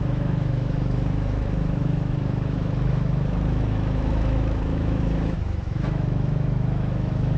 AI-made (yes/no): yes